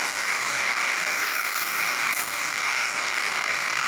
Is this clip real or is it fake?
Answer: fake